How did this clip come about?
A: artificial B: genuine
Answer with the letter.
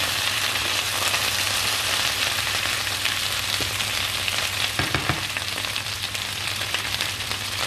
A